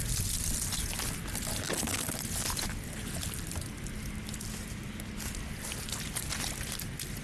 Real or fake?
real